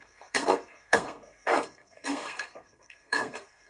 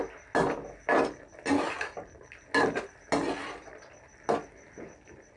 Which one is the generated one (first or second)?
first